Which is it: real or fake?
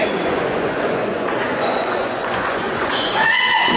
fake